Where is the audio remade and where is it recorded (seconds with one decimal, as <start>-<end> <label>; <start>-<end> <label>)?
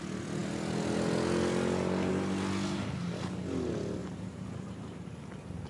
0.0-4.0 recorded; 4.0-5.1 remade; 5.1-5.7 recorded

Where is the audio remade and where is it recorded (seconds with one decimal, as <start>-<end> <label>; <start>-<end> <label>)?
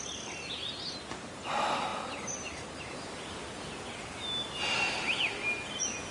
0.0-1.9 recorded; 1.9-2.8 remade; 2.8-6.1 recorded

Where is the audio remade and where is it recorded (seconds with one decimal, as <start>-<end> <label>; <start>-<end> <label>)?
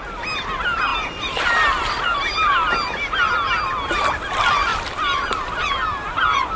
0.0-0.9 recorded; 0.9-1.4 remade; 1.4-4.7 recorded; 4.7-5.5 remade; 5.5-6.6 recorded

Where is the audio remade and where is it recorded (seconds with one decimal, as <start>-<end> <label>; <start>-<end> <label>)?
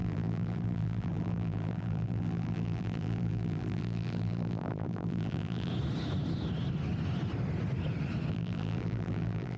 0.0-5.7 remade; 5.7-8.3 recorded; 8.3-9.6 remade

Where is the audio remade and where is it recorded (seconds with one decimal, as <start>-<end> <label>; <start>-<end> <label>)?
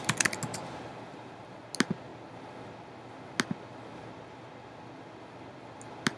0.0-0.5 recorded; 0.5-1.6 remade; 1.6-6.2 recorded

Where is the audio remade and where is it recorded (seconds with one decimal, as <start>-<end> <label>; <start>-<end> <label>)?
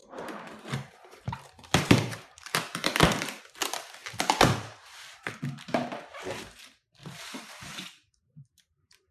0.0-3.4 remade; 3.4-4.0 recorded; 4.0-5.4 remade; 5.4-7.0 recorded; 7.0-9.1 remade